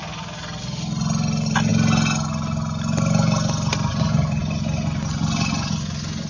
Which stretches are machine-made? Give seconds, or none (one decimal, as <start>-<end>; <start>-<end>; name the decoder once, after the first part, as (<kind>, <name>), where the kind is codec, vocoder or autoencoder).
none